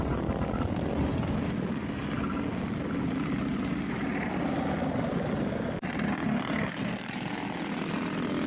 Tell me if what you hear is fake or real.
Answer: real